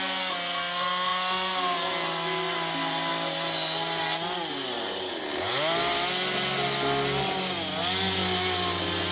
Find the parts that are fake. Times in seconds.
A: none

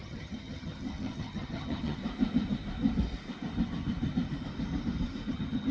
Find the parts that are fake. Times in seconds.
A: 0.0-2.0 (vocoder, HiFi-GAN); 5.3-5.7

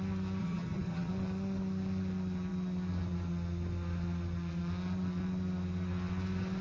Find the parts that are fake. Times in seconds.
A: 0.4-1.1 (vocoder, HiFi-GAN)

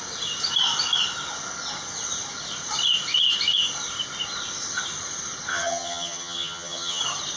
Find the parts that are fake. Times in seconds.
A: 5.5-7.0 (vocoder, HiFi-GAN)

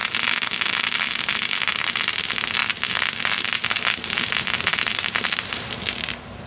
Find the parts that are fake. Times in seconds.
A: none

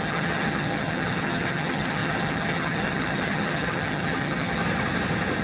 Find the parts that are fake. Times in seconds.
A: 0.0-4.6 (vocoder, HiFi-GAN)